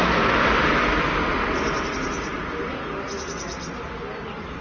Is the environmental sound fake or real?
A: real